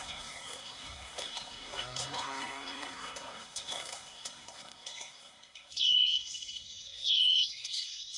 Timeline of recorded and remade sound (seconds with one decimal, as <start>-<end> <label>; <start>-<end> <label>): 0.0-8.2 remade